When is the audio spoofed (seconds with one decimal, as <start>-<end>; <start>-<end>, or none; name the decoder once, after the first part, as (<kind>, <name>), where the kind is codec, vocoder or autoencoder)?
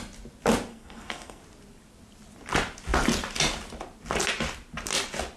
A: 0.7-1.4 (codec, SNAC)